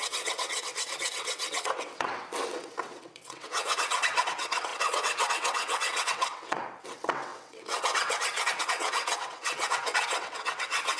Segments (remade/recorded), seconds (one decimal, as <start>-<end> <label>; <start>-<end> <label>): 0.0-11.0 remade